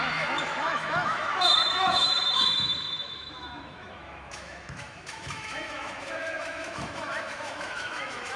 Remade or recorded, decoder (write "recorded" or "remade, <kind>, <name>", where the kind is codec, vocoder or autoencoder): remade, autoencoder, DAC-VAE